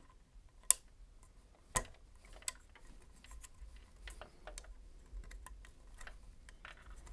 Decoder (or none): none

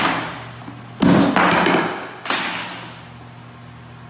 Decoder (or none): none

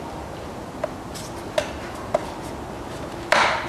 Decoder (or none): none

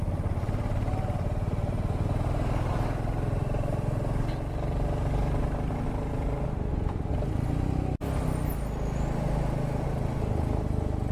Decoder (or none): none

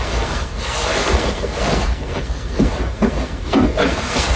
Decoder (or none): codec, SNAC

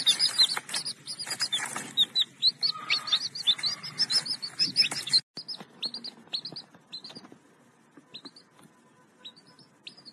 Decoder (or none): none